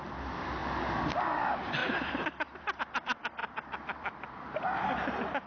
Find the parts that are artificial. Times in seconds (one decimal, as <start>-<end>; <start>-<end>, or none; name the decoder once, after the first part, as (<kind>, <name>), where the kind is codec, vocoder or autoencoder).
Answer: 1.8-2.8 (vocoder, BigVGAN v2); 3.4-4.3